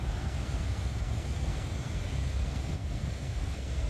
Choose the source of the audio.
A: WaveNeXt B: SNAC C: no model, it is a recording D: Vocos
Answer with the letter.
B